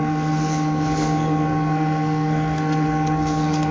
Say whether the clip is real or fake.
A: fake